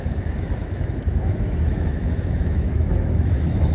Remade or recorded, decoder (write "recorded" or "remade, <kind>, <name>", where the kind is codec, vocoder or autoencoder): remade, autoencoder, DAC-VAE